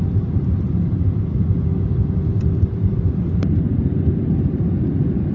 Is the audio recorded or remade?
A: recorded